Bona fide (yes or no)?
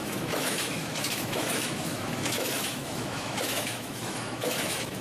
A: no